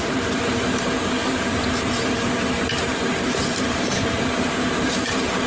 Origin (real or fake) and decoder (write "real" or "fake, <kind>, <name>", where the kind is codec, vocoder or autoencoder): fake, vocoder, BigVGAN v2